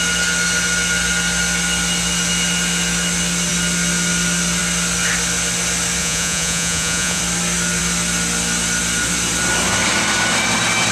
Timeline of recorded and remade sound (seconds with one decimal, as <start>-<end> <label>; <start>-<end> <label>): 0.0-6.0 recorded; 6.0-7.2 remade; 7.2-10.9 recorded